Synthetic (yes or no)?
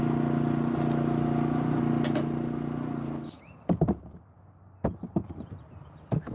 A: no